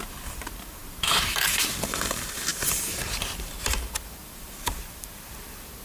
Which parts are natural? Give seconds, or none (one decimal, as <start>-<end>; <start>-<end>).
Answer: none